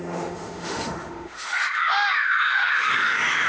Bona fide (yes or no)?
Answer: no